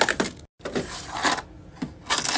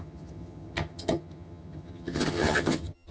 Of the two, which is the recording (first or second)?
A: first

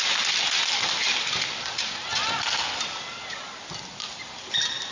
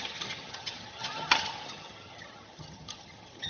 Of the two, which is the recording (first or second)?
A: first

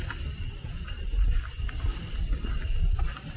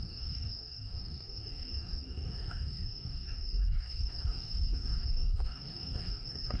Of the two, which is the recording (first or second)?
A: first